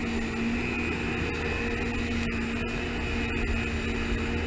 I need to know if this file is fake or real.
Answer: real